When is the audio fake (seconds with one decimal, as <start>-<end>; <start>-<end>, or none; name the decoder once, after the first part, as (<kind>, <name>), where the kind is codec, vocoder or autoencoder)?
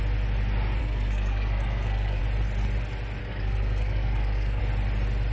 0.8-2.2 (codec, SNAC); 3.2-4.6